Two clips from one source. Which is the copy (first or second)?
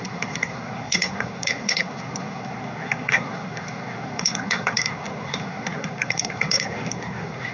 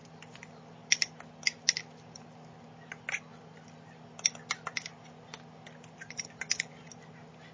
first